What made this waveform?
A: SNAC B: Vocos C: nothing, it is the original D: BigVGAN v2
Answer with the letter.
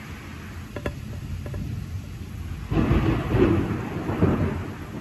C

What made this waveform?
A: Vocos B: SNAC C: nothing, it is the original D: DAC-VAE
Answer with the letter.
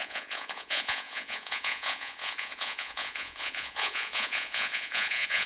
A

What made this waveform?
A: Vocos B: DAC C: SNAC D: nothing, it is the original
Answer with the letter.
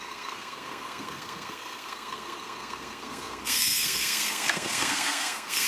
C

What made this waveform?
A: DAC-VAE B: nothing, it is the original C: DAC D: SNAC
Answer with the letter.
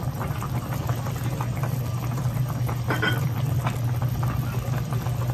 B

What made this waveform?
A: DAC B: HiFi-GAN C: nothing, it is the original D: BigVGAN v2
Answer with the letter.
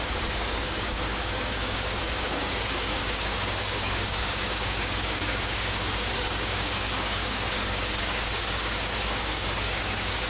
A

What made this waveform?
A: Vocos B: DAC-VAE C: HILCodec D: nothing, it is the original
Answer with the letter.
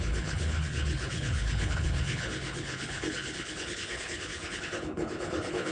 C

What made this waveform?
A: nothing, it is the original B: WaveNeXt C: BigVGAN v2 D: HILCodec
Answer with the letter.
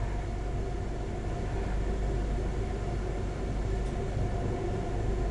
A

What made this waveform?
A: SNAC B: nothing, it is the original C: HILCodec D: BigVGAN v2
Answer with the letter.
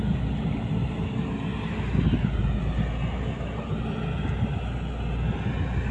B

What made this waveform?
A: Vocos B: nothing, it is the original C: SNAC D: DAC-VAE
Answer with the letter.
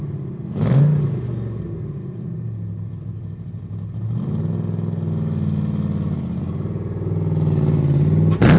B